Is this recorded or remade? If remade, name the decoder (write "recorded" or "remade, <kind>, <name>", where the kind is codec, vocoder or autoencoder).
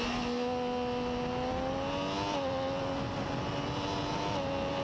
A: recorded